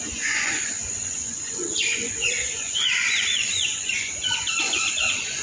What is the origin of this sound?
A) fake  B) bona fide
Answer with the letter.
A